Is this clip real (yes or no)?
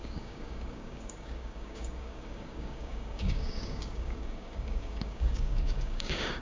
no